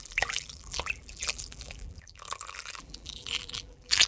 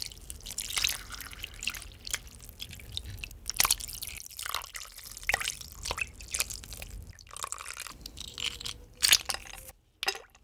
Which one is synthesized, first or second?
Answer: first